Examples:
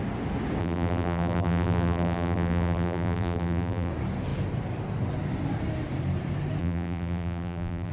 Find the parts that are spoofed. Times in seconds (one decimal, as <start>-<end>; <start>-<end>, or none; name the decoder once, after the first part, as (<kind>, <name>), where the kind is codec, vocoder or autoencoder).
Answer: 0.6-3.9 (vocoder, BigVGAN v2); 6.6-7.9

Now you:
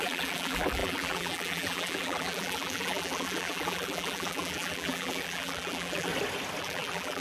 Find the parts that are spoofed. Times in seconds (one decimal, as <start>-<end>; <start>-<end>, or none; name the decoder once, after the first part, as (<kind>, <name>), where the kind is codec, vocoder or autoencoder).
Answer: 0.0-6.1 (vocoder, BigVGAN v2); 6.6-7.2

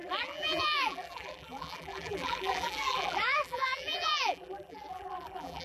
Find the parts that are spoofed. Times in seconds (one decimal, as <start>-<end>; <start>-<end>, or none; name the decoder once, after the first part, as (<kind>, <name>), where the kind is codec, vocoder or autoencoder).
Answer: 0.0-5.6 (vocoder, BigVGAN v2)

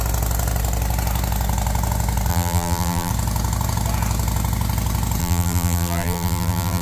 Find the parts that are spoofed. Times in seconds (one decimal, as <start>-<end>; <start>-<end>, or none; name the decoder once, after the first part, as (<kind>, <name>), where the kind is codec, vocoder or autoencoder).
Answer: 2.3-3.1 (vocoder, BigVGAN v2); 5.2-6.8

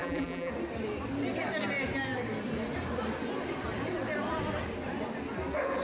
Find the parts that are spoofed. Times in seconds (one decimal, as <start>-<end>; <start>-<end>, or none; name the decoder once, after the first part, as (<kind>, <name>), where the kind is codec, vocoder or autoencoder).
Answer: 0.0-0.5 (vocoder, BigVGAN v2)